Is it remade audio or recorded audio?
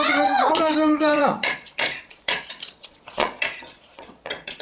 remade